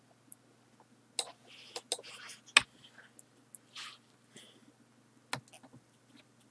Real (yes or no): yes